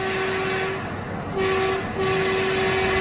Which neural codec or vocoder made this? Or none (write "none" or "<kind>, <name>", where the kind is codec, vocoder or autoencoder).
none